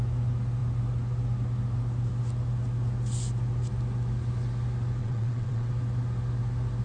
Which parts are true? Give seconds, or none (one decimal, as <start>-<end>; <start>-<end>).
0.0-5.0; 5.7-6.8